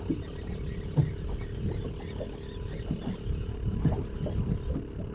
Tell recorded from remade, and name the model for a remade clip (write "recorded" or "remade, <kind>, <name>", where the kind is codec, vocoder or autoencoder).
recorded